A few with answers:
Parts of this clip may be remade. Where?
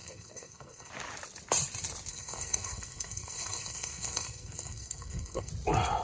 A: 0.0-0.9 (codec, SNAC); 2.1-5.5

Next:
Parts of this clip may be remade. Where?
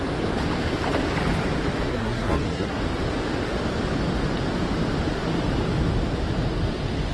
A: 1.9-2.8 (codec, SNAC)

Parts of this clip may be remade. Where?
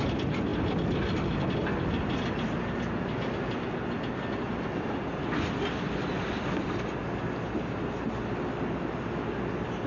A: none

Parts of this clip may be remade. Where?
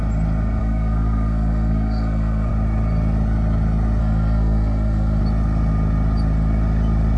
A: 0.6-2.5 (codec, SNAC); 4.0-5.2